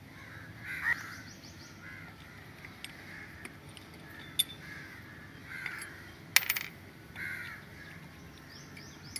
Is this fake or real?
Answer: real